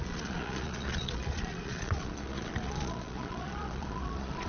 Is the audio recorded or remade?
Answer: remade